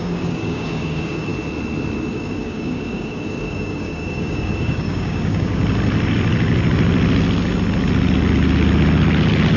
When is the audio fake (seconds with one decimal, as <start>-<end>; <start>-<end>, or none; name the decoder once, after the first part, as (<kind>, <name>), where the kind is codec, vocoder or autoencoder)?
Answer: 0.0-1.3 (codec, DAC); 2.1-5.6